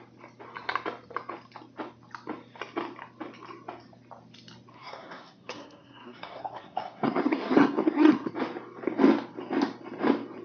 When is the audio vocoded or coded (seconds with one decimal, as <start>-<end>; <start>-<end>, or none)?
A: 4.7-8.3

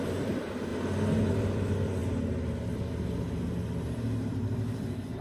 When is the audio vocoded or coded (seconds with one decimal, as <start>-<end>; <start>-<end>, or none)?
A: 0.0-0.7; 1.3-2.0; 4.3-5.2

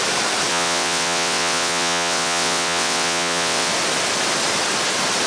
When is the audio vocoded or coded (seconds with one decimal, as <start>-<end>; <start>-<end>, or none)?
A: 0.5-3.7